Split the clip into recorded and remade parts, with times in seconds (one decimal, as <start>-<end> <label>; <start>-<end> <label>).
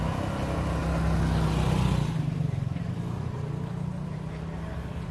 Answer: 0.0-5.1 recorded